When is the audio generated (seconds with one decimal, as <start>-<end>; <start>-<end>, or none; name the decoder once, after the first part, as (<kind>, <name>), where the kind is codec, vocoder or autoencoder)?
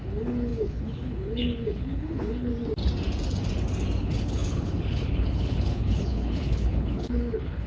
0.0-2.5 (codec, HILCodec); 4.0-7.7